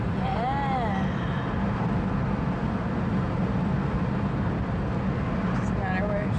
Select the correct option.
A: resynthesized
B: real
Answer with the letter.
B